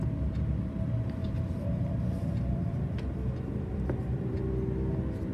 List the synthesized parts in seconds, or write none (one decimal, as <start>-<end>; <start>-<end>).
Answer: 1.2-4.4